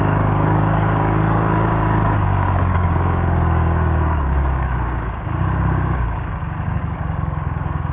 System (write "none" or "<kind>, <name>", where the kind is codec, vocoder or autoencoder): codec, DAC